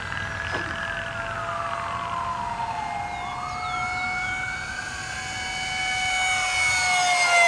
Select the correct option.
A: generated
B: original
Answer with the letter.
B